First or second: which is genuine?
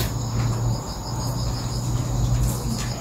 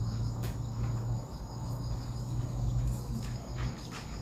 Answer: first